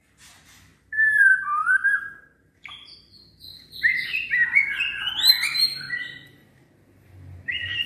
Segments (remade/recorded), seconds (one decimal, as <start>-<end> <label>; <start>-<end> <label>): 0.0-0.7 remade; 0.7-1.4 recorded; 1.4-7.9 remade